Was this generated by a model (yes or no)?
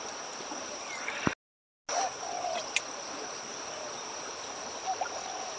no